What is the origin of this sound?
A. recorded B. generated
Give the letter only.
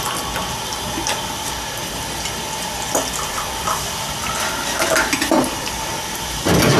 A